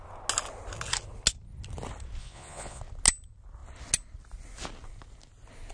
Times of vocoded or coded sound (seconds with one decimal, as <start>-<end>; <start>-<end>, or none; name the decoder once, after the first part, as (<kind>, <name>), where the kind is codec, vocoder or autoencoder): 2.2-2.8 (vocoder, Vocos)